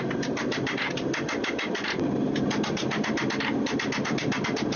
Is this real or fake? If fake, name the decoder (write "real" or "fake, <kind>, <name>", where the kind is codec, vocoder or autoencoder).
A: real